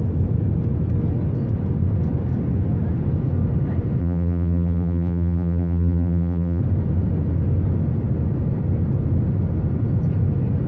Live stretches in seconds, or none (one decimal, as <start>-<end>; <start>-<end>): 0.0-4.0; 6.6-10.7

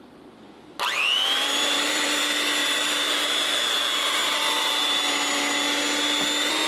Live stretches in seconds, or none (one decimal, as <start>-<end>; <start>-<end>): 0.0-1.0; 2.2-2.6; 3.5-6.7